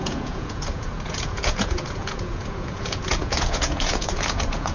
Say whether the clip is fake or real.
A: fake